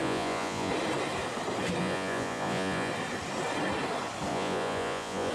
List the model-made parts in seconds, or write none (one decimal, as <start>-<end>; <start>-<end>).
0.0-0.7; 1.8-2.9; 4.3-5.3